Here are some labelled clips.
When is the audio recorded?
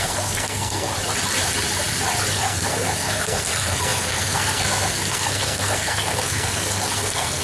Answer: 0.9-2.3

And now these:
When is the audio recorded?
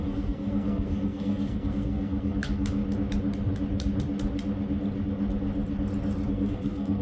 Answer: 2.8-6.3